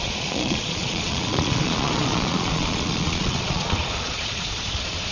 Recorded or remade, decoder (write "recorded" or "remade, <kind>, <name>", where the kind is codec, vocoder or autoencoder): remade, vocoder, Vocos